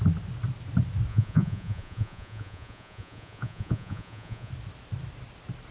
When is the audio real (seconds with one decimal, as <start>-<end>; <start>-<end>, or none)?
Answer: 0.0-1.1; 4.5-5.7